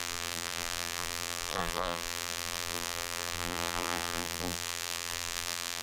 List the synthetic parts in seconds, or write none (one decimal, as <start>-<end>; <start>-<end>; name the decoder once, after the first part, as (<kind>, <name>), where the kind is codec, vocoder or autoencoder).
0.0-5.8 (vocoder, BigVGAN v2)